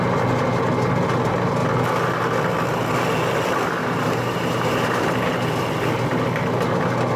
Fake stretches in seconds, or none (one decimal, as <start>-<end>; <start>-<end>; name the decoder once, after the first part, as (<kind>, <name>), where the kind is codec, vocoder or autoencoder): 3.8-5.3 (vocoder, BigVGAN v2)